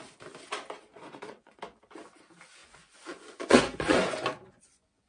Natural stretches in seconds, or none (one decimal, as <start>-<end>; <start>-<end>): 0.0-0.9; 1.6-2.6